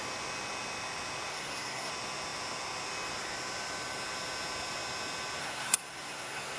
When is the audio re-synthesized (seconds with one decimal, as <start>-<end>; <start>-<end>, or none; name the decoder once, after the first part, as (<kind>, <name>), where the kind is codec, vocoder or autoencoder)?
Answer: 1.3-1.9 (codec, SNAC); 5.4-6.6